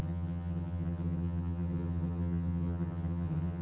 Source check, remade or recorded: remade